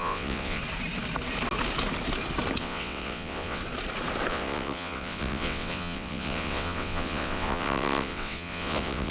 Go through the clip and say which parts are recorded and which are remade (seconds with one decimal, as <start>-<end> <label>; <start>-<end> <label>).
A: 0.0-0.6 remade; 0.6-2.6 recorded; 2.6-3.6 remade; 3.6-4.3 recorded; 4.3-9.1 remade